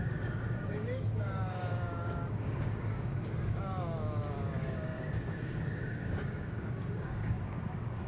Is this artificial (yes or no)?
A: yes